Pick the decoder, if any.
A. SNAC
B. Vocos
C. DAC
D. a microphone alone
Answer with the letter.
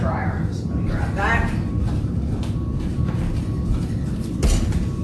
D